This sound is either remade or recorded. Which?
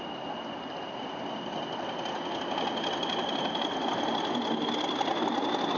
recorded